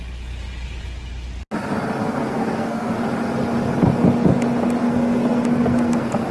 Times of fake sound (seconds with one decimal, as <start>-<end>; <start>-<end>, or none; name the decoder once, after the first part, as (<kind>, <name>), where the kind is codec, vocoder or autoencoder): 2.0-3.0 (codec, SNAC); 4.8-6.3